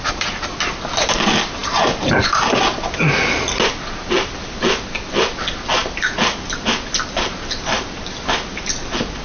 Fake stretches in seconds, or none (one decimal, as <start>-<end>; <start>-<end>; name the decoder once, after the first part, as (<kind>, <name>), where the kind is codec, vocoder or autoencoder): none